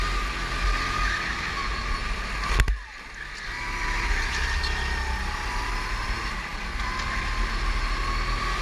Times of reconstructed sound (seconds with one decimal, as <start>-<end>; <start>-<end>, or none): none